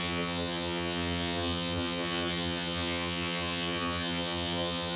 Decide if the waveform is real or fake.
fake